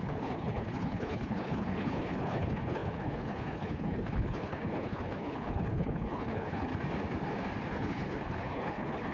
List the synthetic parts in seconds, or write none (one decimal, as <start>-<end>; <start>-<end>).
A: 0.0-6.7; 7.7-9.1